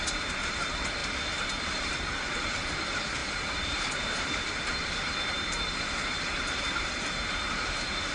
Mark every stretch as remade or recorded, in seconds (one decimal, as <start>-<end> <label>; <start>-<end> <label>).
0.0-1.0 remade; 1.0-1.6 recorded; 1.6-8.1 remade